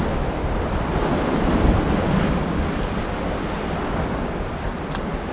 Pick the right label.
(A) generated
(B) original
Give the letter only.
B